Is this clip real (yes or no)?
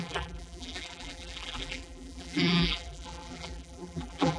no